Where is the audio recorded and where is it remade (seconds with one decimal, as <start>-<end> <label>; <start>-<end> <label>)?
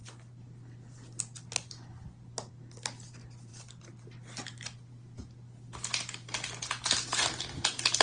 0.0-8.0 recorded